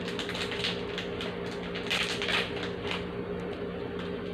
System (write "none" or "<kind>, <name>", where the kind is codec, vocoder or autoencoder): none